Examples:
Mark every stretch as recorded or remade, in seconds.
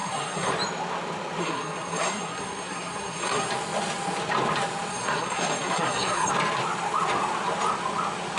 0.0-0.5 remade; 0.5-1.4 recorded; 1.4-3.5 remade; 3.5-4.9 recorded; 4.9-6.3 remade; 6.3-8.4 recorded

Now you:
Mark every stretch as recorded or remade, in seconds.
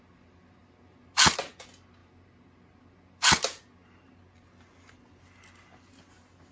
0.0-6.5 recorded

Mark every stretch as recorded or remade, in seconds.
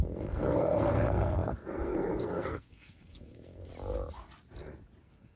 0.0-3.7 remade; 3.7-5.0 recorded; 5.0-5.4 remade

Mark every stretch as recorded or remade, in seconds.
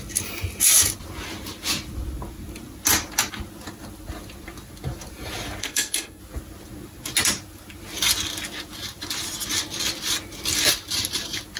0.0-5.6 recorded; 5.6-6.2 remade; 6.2-11.6 recorded